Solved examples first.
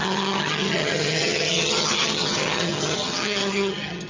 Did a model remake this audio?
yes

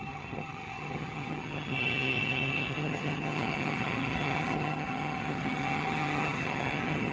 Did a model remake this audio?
yes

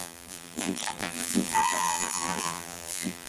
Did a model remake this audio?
yes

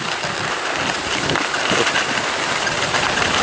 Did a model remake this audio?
no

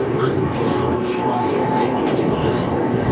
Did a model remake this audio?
yes